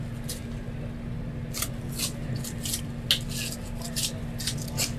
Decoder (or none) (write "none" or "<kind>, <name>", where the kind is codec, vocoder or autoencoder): none